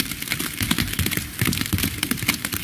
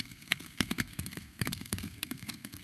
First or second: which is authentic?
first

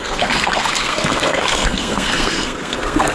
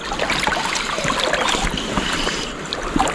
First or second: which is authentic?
second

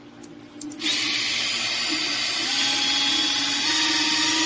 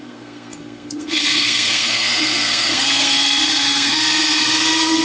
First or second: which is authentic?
first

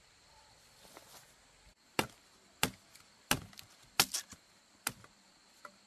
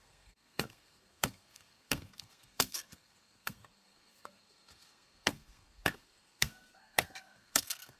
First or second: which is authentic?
first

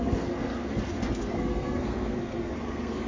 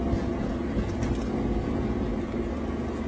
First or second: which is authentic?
second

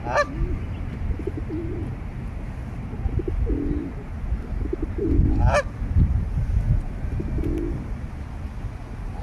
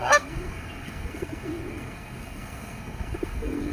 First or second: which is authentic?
first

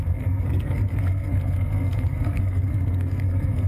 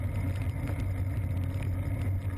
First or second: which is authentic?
second